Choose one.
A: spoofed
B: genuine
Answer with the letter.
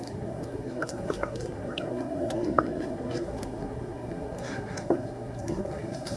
A